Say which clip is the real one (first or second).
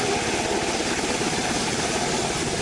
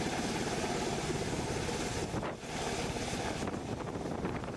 second